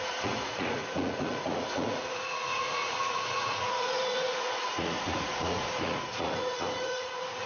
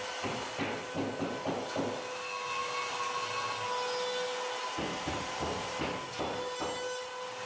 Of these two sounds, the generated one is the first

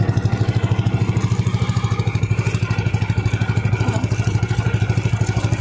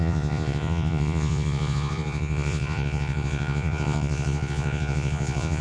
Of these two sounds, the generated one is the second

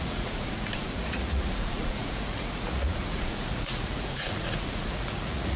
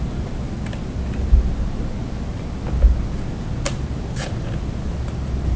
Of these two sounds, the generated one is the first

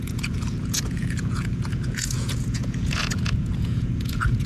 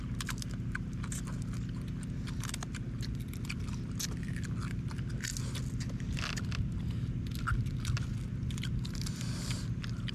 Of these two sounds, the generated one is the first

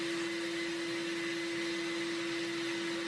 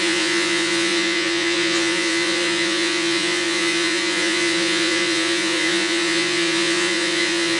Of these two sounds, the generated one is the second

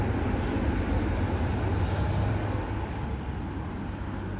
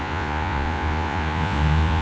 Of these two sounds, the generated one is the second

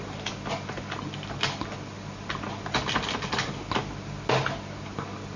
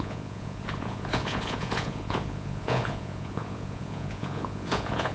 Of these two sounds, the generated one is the second